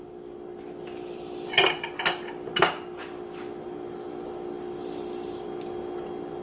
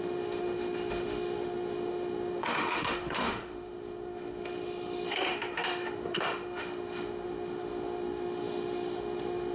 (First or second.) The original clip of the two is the first